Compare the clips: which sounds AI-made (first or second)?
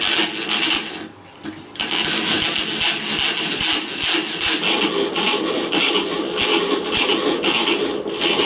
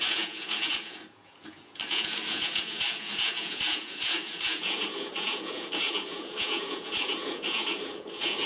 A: second